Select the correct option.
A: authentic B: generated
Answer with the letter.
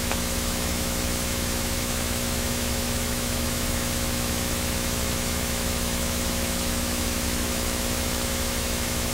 B